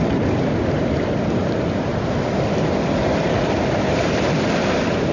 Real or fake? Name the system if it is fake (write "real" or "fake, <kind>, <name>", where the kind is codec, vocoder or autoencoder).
real